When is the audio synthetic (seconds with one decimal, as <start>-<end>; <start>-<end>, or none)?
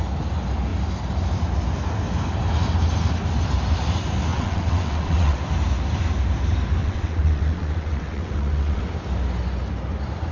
4.3-5.4; 6.8-8.8